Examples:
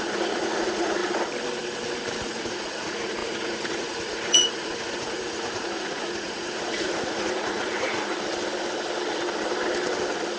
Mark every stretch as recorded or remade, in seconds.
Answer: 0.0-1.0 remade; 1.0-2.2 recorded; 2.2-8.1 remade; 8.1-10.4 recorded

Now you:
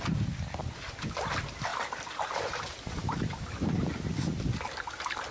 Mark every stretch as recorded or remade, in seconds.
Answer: 0.0-5.3 recorded

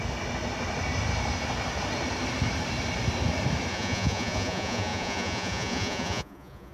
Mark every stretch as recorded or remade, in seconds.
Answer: 0.0-3.7 recorded; 3.7-6.7 remade